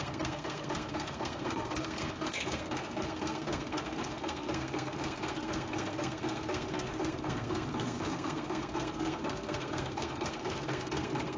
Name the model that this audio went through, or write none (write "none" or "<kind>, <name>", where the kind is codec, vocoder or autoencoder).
codec, SNAC